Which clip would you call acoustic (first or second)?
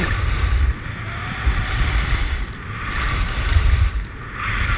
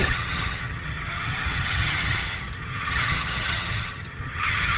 first